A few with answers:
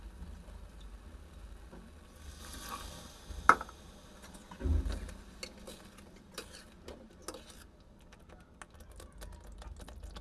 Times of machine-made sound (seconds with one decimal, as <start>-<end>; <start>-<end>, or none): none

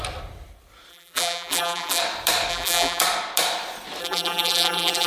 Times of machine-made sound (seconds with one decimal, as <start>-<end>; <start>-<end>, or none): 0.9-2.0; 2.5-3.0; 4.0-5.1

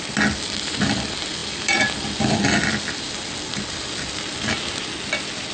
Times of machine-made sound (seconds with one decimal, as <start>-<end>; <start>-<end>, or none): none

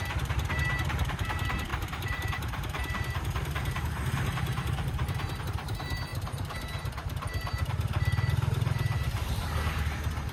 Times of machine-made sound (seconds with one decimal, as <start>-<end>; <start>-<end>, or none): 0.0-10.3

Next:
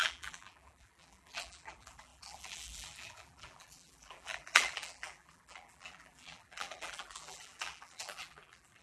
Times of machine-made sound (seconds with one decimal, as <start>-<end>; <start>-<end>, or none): 0.0-8.8

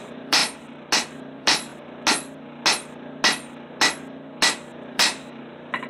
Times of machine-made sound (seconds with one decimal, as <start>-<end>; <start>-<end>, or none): 0.0-0.4; 1.1-1.7; 4.7-5.9